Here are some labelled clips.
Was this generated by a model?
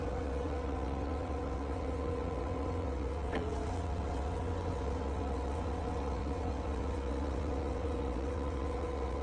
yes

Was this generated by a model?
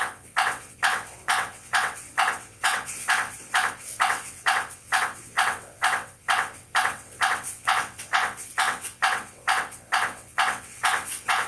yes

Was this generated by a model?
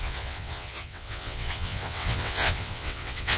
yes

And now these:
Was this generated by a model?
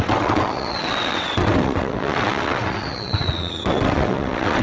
yes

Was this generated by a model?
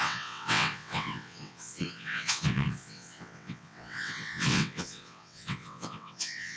yes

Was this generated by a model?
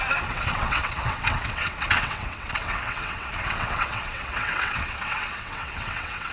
yes